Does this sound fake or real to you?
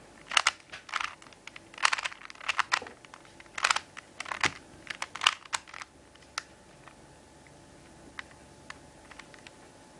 real